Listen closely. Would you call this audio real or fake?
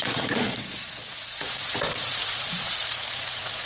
fake